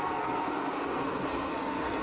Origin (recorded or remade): remade